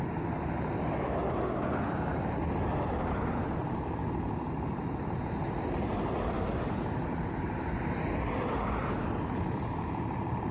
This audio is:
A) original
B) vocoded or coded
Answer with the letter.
A